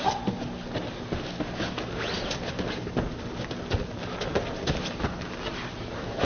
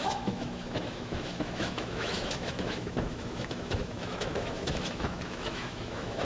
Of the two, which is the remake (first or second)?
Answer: second